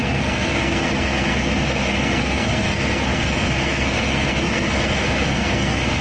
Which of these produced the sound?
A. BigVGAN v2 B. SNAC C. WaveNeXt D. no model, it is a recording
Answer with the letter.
B